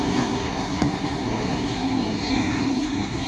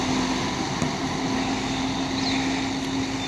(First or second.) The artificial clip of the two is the first